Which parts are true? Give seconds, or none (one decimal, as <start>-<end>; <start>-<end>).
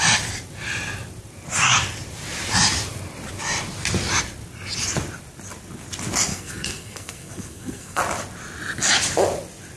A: 0.0-6.3; 8.0-9.8